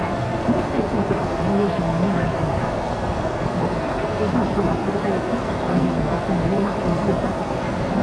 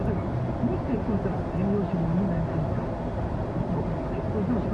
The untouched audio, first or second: second